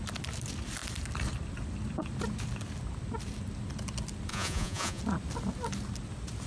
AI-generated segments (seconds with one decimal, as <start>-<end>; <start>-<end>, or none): 4.3-5.0